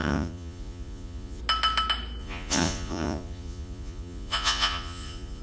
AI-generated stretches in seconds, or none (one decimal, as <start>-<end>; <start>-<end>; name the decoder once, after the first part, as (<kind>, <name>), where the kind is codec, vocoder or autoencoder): 0.0-1.4 (vocoder, Vocos); 2.2-5.4